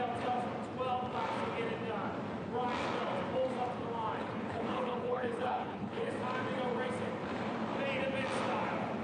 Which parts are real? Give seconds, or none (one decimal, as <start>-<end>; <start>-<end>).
0.0-4.2; 6.1-9.0